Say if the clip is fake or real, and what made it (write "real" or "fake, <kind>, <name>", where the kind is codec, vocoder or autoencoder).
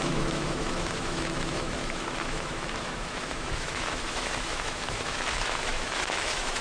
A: fake, autoencoder, DAC-VAE